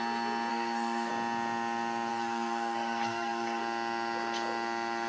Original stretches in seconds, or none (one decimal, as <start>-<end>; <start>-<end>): 0.0-0.5; 1.1-2.1; 3.6-5.1